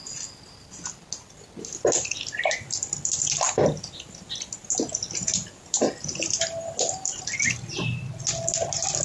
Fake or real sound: real